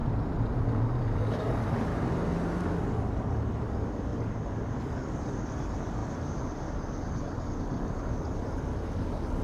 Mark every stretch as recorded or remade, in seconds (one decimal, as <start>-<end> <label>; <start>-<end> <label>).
0.0-0.6 recorded; 0.6-1.9 remade; 1.9-2.6 recorded; 2.6-9.4 remade